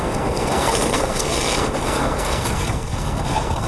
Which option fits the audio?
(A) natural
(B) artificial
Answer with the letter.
B